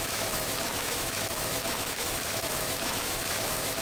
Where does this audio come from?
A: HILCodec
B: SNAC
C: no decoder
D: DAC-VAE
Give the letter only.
D